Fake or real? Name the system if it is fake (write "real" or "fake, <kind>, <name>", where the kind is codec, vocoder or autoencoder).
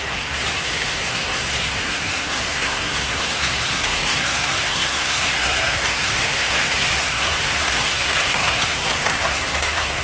fake, codec, SNAC